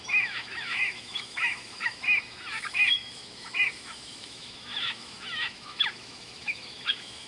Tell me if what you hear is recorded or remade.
remade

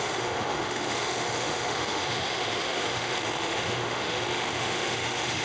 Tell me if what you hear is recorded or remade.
remade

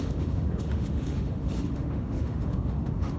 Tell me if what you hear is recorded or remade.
remade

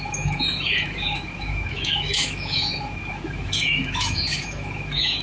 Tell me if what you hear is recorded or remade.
remade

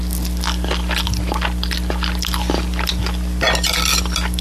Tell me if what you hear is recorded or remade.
recorded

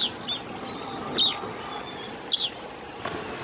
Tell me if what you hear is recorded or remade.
recorded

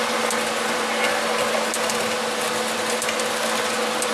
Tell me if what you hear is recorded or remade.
recorded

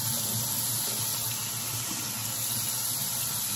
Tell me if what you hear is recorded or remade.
recorded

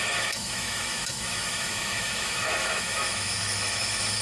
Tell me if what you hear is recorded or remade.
remade